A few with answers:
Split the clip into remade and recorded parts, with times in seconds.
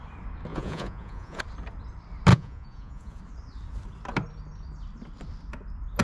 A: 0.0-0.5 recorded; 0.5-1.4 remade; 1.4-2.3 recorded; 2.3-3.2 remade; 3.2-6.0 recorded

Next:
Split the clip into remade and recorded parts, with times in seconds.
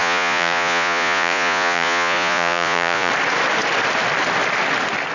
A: 0.0-3.1 remade; 3.1-5.1 recorded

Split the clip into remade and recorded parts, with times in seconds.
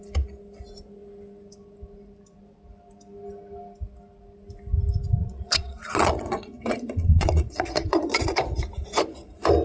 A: 0.0-5.2 recorded; 5.2-8.2 remade; 8.2-9.6 recorded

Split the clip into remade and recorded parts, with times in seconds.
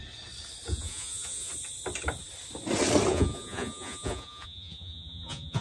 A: 0.0-0.7 recorded; 0.7-1.5 remade; 1.5-3.1 recorded; 3.1-5.6 remade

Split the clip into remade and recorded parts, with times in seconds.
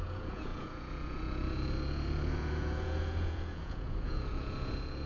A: 0.0-5.1 remade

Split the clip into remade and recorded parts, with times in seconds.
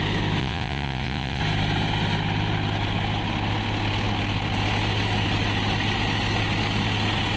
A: 0.0-0.4 recorded; 0.4-1.4 remade; 1.4-7.4 recorded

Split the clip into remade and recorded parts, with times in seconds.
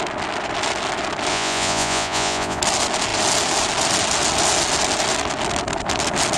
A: 0.0-1.3 recorded; 1.3-2.6 remade; 2.6-6.4 recorded